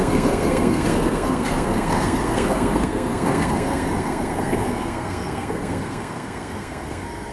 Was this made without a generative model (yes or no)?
no